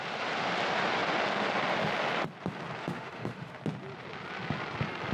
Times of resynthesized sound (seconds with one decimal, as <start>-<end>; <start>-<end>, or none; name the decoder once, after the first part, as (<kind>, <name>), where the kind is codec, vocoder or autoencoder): 2.8-3.6 (autoencoder, DAC-VAE)